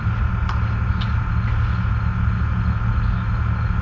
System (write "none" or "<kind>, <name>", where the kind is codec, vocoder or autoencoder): none